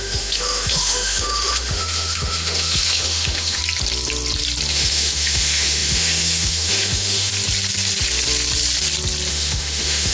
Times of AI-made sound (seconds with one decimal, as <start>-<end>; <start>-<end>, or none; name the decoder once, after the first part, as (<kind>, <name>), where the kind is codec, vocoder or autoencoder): 0.0-3.6 (autoencoder, DAC-VAE); 4.7-7.3; 9.3-10.1